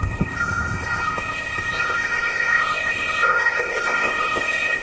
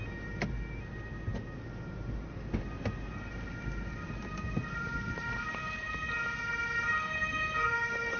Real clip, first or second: second